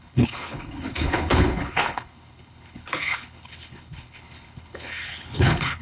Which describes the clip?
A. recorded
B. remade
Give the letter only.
B